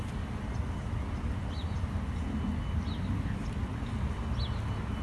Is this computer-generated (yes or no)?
no